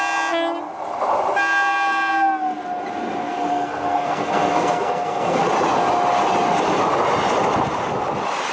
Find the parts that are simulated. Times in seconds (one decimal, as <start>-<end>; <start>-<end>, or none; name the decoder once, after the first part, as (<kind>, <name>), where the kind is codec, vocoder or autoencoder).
3.2-5.4 (codec, SNAC)